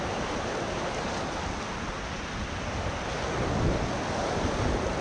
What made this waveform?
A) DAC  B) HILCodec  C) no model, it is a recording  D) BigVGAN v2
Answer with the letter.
C